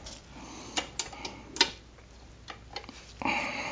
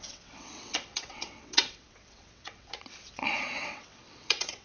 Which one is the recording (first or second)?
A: first